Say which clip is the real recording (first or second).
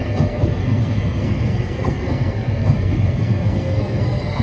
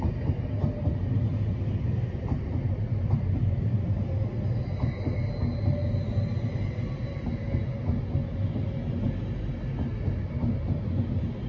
second